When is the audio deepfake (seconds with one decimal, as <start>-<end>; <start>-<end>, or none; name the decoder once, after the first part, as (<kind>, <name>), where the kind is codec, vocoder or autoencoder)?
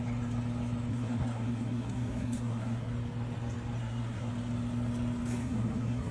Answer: 0.9-2.9 (codec, SNAC); 3.8-4.3; 5.4-6.1